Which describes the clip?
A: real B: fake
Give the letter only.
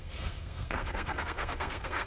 B